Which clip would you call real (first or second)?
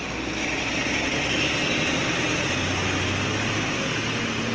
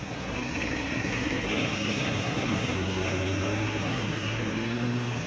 first